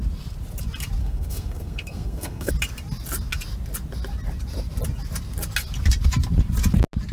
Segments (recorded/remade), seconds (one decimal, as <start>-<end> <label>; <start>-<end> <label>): 0.0-1.0 recorded; 1.0-2.5 remade; 2.5-7.1 recorded